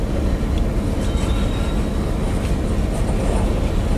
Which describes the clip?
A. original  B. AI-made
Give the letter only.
A